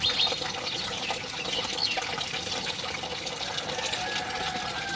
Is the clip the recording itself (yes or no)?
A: yes